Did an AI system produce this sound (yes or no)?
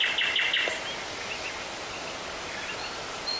no